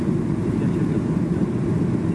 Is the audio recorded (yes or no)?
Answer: yes